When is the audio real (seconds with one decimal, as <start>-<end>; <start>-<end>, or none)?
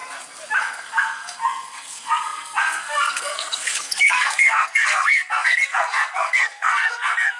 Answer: 0.0-0.6